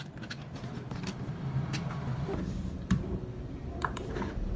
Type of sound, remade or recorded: remade